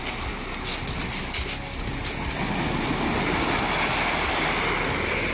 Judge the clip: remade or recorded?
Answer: recorded